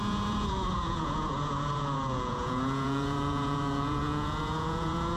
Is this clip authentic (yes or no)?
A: no